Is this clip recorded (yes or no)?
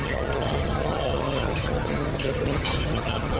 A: no